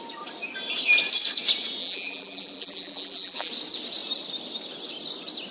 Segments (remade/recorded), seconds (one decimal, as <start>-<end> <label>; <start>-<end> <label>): 0.0-1.8 recorded; 1.8-3.5 remade; 3.5-5.5 recorded